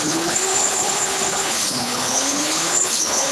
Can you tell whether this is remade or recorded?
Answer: remade